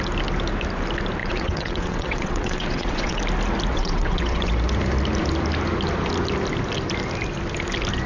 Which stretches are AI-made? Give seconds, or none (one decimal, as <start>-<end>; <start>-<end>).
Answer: 1.2-3.2; 3.7-4.5